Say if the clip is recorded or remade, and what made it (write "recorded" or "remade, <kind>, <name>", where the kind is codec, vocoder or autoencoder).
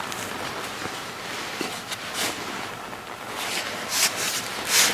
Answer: recorded